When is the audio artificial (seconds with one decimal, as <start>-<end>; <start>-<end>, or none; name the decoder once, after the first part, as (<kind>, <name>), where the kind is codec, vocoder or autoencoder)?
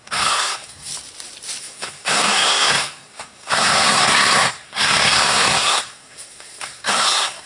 0.0-0.9 (codec, SNAC); 1.6-7.5